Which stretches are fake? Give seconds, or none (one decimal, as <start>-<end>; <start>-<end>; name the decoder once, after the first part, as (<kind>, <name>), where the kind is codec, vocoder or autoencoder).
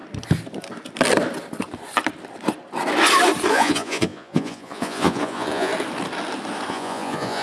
3.5-5.7 (vocoder, Vocos); 6.7-7.4